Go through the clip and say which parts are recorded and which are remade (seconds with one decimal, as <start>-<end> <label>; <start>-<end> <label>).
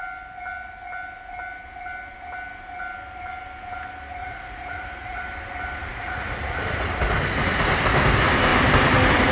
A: 0.0-4.2 recorded; 4.2-5.2 remade; 5.2-5.8 recorded; 5.8-6.6 remade; 6.6-9.3 recorded